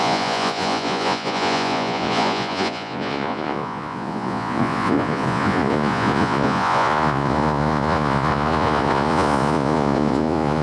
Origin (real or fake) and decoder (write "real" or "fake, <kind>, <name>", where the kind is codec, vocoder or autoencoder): fake, vocoder, Vocos